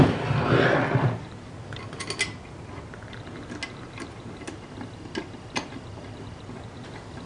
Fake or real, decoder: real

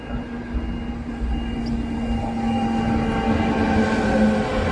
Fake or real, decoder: real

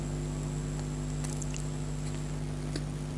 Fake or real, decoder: real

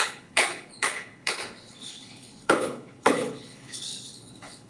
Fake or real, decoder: fake, codec, HILCodec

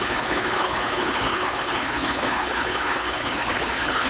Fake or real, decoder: fake, codec, HILCodec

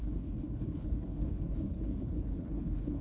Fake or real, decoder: fake, codec, HILCodec